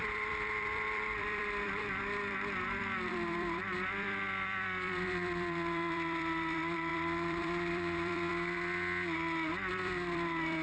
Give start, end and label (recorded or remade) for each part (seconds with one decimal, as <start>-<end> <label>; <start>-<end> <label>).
0.0-8.3 remade; 8.3-9.7 recorded; 9.7-10.6 remade